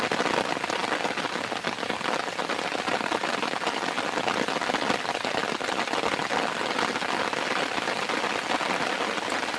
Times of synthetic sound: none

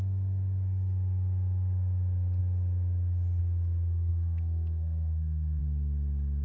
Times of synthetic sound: 4.1-5.6 (codec, SNAC)